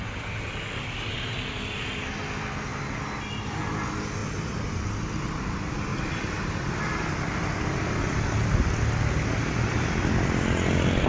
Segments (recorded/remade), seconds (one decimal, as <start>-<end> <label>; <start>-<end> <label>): 0.0-4.2 recorded; 4.2-4.8 remade; 4.8-11.1 recorded